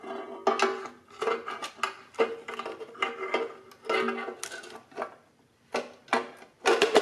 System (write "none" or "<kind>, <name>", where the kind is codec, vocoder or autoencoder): none